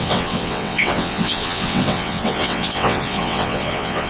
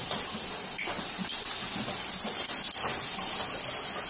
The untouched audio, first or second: second